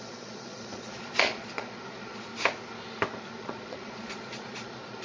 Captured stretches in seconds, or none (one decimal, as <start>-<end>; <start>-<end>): 2.3-3.4